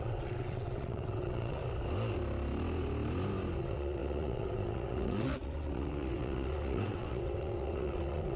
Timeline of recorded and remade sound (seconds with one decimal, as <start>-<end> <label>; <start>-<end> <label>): 0.0-1.6 remade; 1.6-3.6 recorded; 3.6-8.4 remade